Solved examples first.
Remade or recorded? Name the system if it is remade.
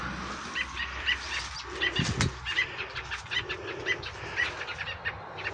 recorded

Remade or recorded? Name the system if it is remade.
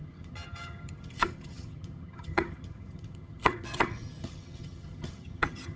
remade, vocoder, HiFi-GAN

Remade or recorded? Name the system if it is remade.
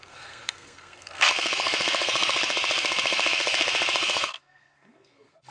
remade, codec, SNAC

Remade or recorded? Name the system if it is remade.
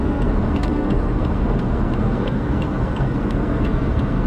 remade, codec, SNAC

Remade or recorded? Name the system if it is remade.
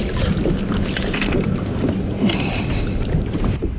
recorded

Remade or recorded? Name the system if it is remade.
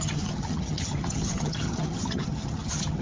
remade, vocoder, HiFi-GAN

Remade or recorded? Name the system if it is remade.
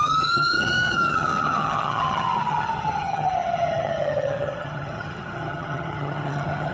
remade, vocoder, HiFi-GAN